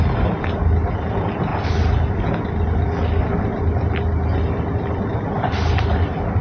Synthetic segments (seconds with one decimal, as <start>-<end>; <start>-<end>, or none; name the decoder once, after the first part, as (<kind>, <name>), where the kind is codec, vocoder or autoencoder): none